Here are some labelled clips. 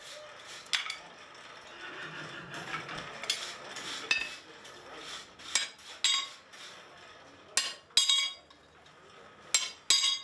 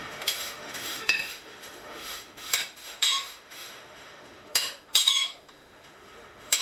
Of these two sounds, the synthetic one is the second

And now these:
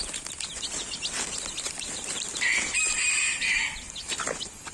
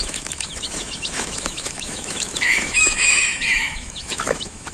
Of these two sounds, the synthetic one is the second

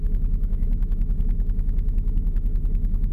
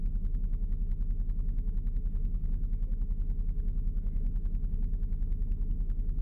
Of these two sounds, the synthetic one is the first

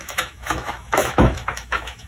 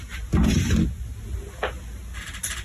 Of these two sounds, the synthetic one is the first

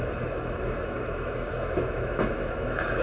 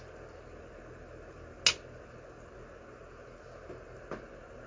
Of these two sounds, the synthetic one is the first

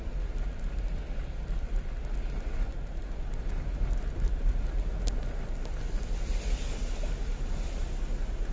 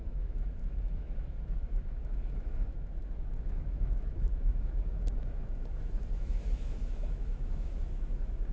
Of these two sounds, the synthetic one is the second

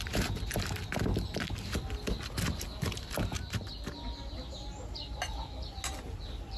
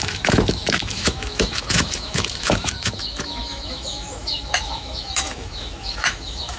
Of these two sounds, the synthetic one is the second